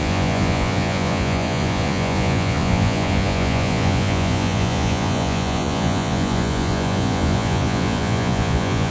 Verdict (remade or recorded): remade